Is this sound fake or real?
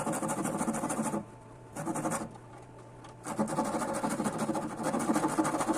real